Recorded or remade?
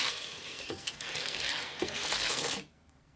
remade